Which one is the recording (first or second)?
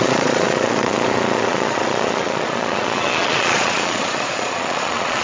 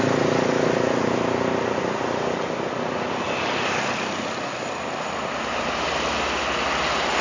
second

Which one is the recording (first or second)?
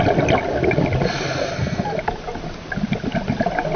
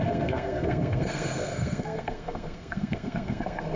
first